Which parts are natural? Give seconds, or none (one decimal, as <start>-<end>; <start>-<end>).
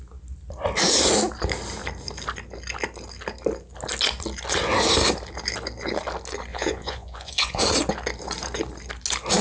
0.0-6.5; 7.6-9.4